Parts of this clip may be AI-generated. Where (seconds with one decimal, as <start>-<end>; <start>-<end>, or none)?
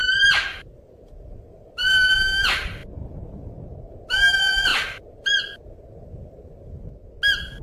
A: 0.0-2.1; 4.7-5.3